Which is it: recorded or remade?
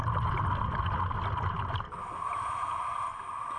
recorded